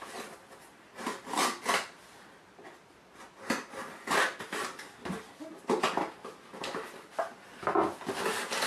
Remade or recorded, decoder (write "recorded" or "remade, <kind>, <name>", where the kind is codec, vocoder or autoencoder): recorded